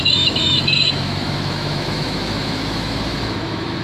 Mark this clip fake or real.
fake